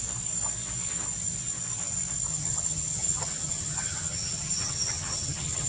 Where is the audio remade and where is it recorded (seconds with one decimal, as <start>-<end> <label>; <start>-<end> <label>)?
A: 0.0-2.3 recorded; 2.3-5.7 remade